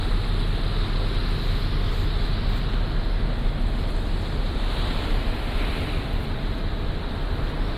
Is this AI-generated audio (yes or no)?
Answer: no